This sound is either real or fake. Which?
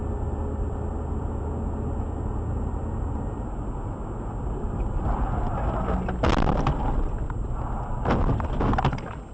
real